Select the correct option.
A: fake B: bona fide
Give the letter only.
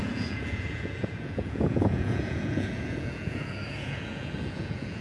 A